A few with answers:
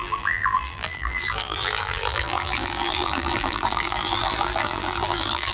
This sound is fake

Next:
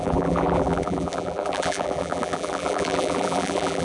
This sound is fake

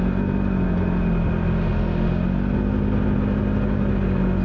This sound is real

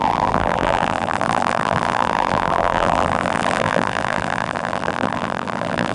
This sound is fake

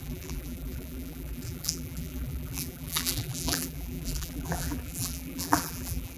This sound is fake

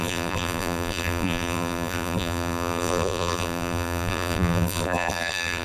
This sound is fake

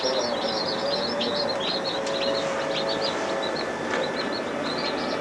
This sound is real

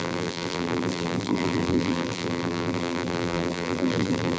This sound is fake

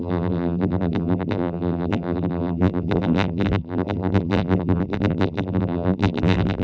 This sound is fake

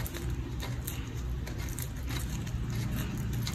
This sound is real